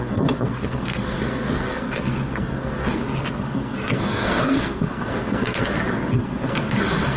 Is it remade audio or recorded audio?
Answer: remade